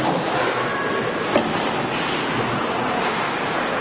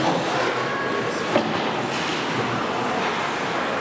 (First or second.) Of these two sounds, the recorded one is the second